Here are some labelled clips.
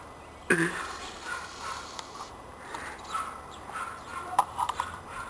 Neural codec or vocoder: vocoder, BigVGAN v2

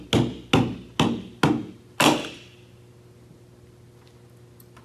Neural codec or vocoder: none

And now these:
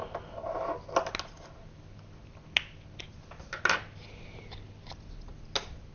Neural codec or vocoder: none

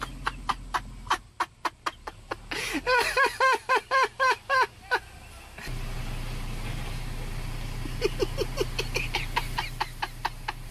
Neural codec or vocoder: none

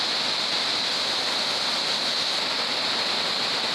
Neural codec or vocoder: none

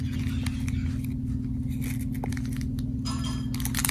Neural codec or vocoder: none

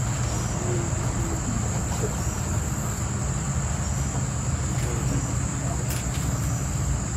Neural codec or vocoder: none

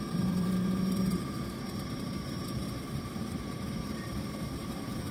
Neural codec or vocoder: vocoder, BigVGAN v2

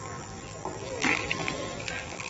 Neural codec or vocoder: vocoder, BigVGAN v2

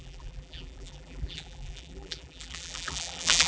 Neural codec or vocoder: vocoder, BigVGAN v2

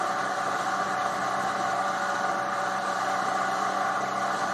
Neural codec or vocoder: none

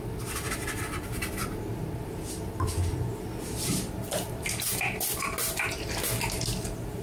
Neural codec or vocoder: none